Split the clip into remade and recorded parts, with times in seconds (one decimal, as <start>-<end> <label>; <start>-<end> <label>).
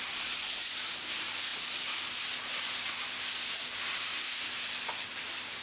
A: 0.0-5.6 recorded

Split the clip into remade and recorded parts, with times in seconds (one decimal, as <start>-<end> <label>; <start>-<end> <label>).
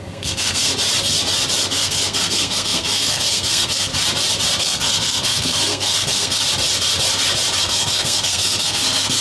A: 0.0-0.7 remade; 0.7-1.7 recorded; 1.7-3.9 remade; 3.9-4.6 recorded; 4.6-6.4 remade; 6.4-7.6 recorded; 7.6-9.2 remade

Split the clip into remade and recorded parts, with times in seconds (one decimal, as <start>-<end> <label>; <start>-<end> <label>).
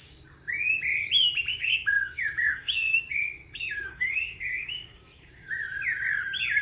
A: 0.0-0.5 remade; 0.5-1.5 recorded; 1.5-5.5 remade; 5.5-6.6 recorded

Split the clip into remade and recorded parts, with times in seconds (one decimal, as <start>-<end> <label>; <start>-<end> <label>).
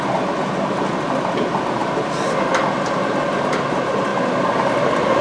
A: 0.0-5.2 recorded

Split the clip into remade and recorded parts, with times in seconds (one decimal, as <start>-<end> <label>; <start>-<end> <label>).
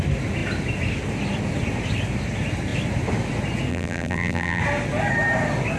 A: 0.0-3.7 recorded; 3.7-4.6 remade; 4.6-5.8 recorded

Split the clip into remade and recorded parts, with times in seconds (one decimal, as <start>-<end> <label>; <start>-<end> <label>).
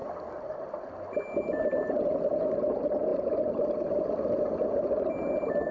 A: 0.0-5.7 recorded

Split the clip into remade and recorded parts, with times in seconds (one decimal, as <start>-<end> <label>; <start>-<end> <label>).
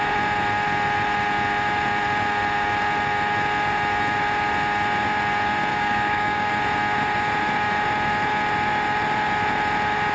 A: 0.0-5.7 recorded; 5.7-6.5 remade; 6.5-10.1 recorded